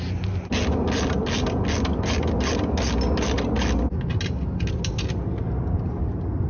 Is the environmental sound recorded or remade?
recorded